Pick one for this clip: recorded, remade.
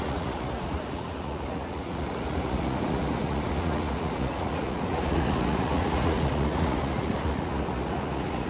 remade